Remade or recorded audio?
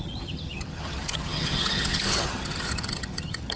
remade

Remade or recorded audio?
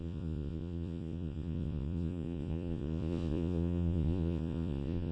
remade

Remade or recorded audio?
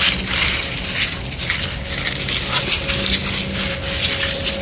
recorded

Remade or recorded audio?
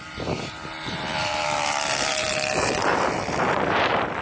remade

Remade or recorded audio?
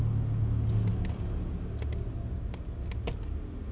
recorded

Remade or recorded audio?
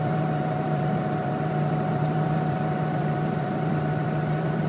remade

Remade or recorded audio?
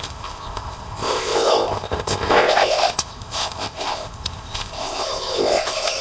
remade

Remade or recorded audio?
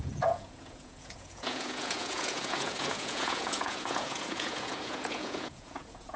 remade